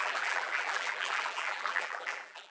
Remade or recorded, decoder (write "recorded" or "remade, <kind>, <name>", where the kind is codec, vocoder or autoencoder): remade, vocoder, BigVGAN v2